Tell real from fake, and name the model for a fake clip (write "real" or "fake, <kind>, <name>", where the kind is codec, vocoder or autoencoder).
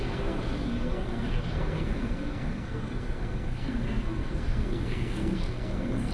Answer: fake, codec, SNAC